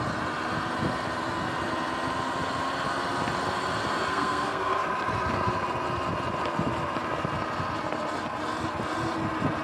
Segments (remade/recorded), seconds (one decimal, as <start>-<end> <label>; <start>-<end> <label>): 0.0-4.1 recorded; 4.1-4.8 remade; 4.8-9.6 recorded